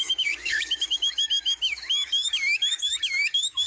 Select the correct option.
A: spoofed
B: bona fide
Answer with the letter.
A